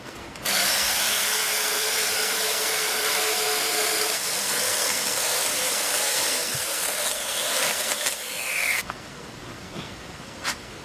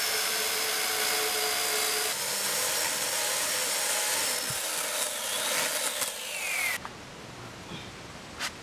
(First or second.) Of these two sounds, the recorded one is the second